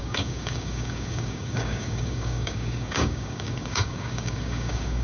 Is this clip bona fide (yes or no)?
no